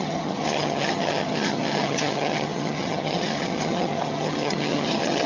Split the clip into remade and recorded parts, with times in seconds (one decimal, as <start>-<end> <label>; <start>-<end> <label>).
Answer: 0.0-5.3 remade